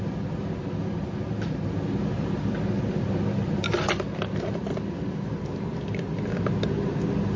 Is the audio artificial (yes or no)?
no